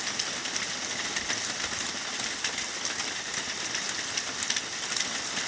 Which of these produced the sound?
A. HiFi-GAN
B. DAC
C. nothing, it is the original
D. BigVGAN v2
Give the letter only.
C